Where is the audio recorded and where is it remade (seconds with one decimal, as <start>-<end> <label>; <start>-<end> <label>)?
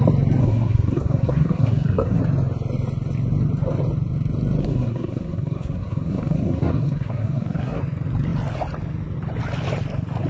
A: 0.0-0.4 recorded; 0.4-2.2 remade; 2.2-4.6 recorded; 4.6-7.8 remade; 7.8-10.3 recorded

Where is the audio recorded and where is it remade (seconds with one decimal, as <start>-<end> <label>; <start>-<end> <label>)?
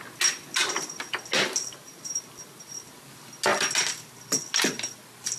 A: 0.0-5.4 recorded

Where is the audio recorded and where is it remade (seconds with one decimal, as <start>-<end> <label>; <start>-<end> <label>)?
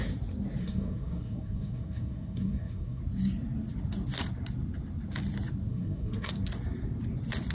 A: 0.0-0.6 recorded; 0.6-3.0 remade; 3.0-5.7 recorded; 5.7-6.3 remade; 6.3-7.5 recorded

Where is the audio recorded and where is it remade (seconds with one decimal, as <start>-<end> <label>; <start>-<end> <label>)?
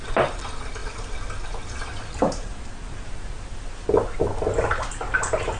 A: 0.0-5.6 recorded